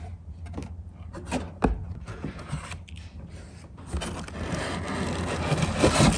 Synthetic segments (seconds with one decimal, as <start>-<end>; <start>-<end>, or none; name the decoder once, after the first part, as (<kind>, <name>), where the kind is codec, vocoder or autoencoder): none